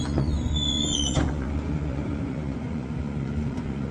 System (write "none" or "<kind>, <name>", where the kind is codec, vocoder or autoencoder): vocoder, Vocos